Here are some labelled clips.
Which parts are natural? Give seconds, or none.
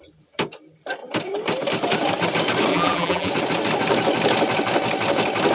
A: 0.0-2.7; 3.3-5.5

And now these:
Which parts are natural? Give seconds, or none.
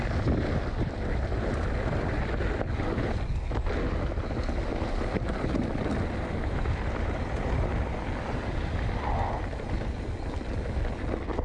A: 0.0-4.7; 7.9-11.4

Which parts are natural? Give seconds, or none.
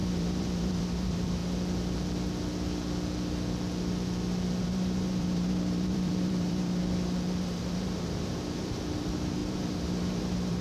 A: 1.4-4.6; 6.8-7.4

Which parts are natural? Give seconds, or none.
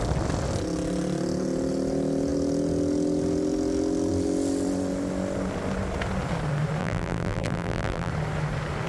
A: 0.0-6.8; 8.1-8.9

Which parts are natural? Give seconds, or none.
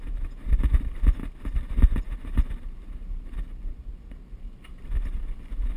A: 1.2-4.7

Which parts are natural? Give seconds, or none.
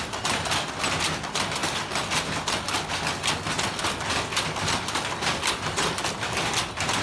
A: 0.0-7.0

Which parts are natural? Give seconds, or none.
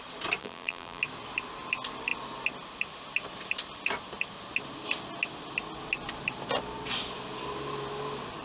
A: 0.0-0.4; 1.0-8.4